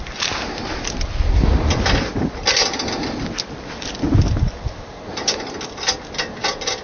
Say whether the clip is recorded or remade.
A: recorded